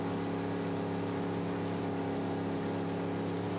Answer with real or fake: real